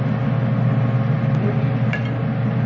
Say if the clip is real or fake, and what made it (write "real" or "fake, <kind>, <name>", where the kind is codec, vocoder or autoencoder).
real